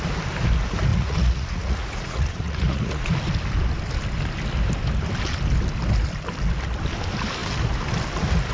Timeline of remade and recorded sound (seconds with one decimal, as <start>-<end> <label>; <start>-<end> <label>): 0.0-0.9 recorded; 0.9-3.1 remade; 3.1-8.5 recorded